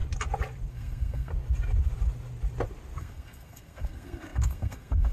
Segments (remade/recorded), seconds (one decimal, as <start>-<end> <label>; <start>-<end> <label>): 0.0-0.7 recorded; 0.7-1.3 remade; 1.3-3.0 recorded; 3.0-5.1 remade